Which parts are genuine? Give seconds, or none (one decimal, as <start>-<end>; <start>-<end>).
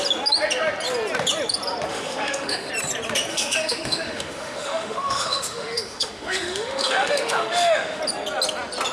0.0-1.9; 2.7-3.3; 8.0-8.9